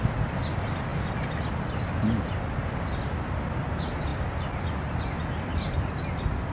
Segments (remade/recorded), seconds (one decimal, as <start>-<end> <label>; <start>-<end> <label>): 0.0-6.5 recorded